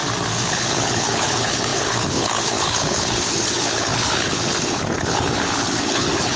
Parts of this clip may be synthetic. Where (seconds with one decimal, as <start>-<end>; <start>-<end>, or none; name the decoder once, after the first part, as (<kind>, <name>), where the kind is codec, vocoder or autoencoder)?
0.5-6.4 (codec, HILCodec)